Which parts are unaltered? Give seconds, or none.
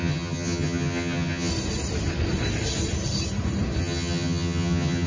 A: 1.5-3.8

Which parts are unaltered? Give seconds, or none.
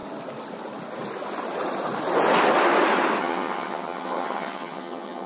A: 0.0-3.2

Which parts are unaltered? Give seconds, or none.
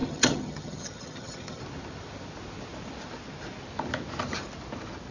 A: 1.6-5.1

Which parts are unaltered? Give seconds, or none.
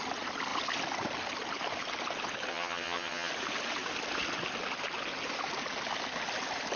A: 0.0-2.5; 3.3-6.8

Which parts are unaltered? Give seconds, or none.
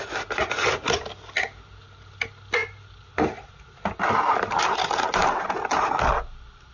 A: 0.0-6.7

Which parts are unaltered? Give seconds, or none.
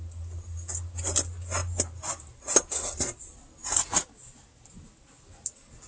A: 0.0-5.9